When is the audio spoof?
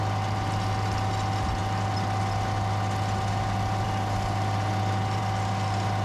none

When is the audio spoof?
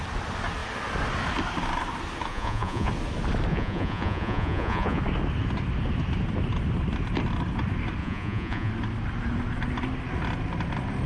2.3-2.9 (vocoder, Vocos); 3.5-5.0; 8.0-8.7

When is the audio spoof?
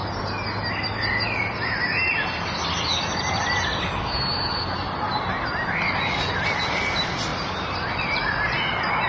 none